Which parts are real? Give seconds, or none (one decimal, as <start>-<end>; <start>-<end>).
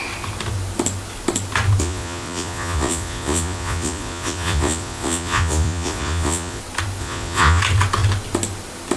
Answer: 0.0-1.8; 6.6-7.0; 7.6-9.0